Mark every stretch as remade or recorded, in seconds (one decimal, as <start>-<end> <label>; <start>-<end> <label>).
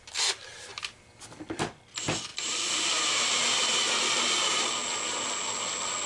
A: 0.0-6.1 recorded